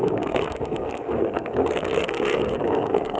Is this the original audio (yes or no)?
no